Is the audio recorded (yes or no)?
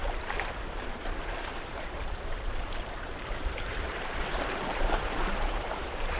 no